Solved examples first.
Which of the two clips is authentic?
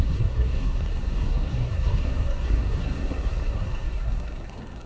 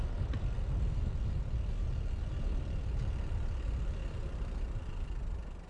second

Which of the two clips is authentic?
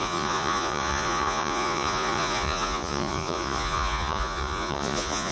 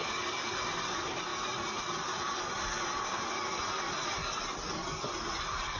second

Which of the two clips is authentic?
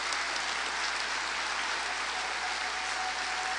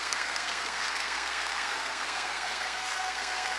first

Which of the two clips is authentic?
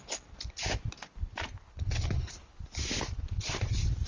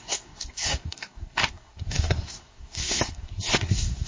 first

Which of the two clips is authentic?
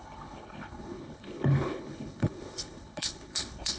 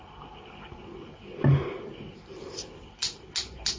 second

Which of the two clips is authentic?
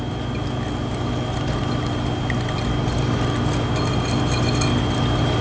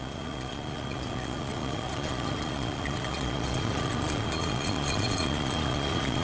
first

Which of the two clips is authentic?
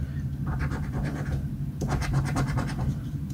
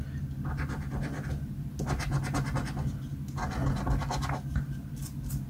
second